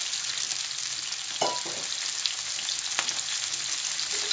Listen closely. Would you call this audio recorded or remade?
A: recorded